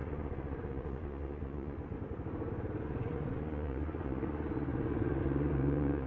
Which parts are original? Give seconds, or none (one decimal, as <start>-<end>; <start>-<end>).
1.9-2.8